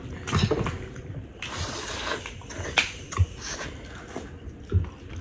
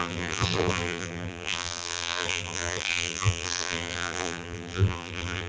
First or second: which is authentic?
first